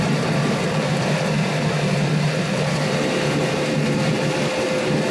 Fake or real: fake